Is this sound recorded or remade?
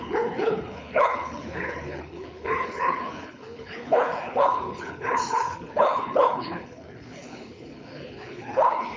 remade